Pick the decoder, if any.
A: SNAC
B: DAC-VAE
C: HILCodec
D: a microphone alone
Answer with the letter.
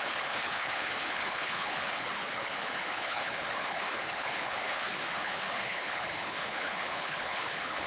C